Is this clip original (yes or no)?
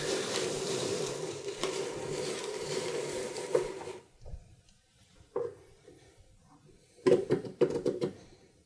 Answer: no